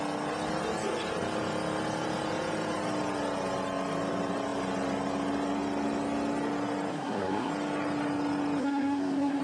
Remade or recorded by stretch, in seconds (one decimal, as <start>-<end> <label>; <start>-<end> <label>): 0.0-6.9 recorded; 6.9-7.5 remade; 7.5-8.6 recorded; 8.6-9.4 remade